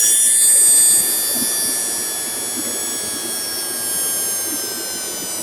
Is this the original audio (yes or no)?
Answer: yes